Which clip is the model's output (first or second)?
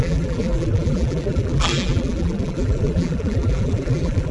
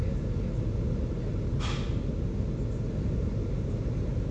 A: first